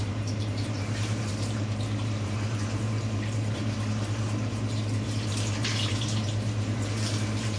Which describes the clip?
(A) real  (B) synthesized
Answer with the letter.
B